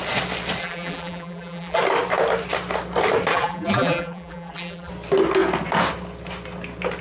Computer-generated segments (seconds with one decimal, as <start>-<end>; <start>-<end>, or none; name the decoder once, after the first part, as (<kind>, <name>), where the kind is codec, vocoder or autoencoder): 0.6-1.8 (vocoder, BigVGAN v2); 3.3-4.9